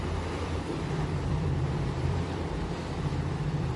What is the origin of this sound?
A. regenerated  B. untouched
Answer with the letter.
A